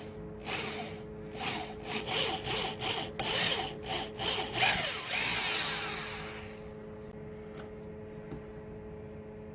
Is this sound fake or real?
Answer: real